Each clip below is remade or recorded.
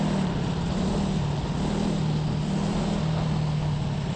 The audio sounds recorded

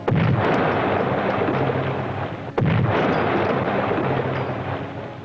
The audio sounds recorded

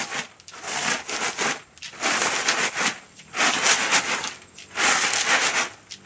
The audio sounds recorded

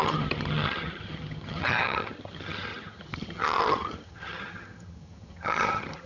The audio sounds remade